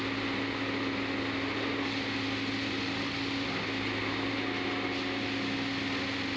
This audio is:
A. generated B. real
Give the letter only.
B